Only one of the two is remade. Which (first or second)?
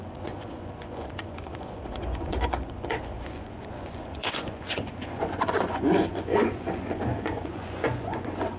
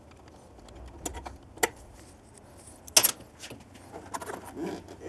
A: first